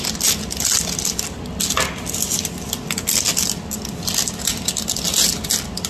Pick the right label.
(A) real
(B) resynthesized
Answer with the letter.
A